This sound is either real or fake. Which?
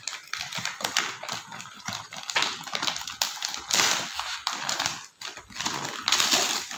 real